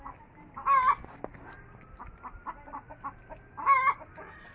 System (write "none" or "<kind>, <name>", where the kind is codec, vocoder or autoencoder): none